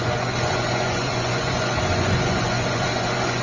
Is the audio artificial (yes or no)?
yes